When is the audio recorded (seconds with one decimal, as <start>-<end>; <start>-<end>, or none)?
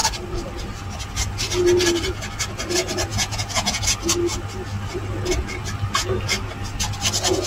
0.0-3.1; 3.8-7.5